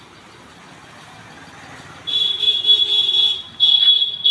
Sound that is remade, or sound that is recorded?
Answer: recorded